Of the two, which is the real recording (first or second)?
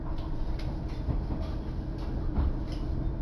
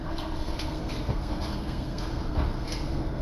first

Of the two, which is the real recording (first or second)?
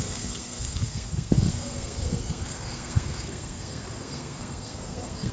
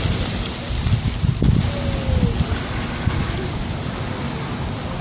second